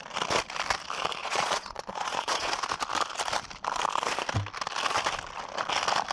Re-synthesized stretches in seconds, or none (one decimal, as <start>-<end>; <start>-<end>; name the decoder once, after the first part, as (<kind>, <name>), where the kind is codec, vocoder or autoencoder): 1.2-2.5 (vocoder, Vocos)